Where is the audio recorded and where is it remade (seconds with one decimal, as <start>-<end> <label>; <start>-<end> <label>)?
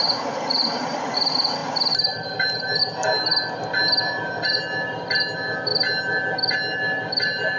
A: 0.0-7.6 recorded